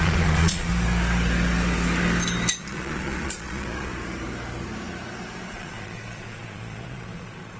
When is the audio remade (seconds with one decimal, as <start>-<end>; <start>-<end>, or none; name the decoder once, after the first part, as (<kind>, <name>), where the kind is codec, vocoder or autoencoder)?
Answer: 0.0-0.7 (vocoder, Vocos); 2.6-3.9; 5.5-7.6